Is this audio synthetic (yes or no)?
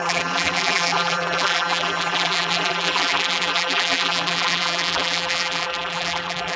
yes